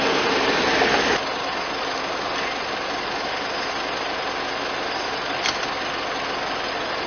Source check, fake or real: real